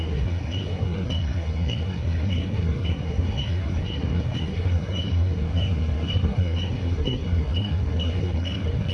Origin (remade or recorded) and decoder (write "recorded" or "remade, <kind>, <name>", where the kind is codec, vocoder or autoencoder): remade, codec, SNAC